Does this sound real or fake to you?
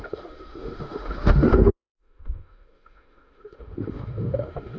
fake